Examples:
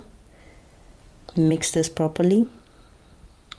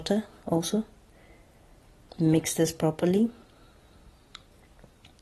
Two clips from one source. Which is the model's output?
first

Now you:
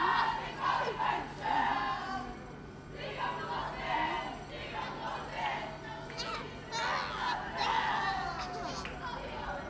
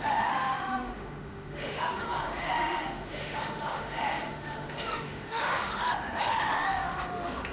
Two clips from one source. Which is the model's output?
second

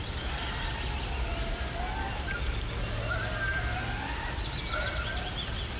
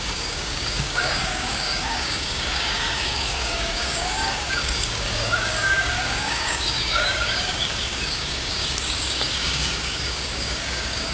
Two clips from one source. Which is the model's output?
second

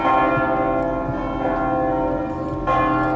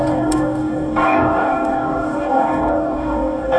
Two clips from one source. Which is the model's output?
second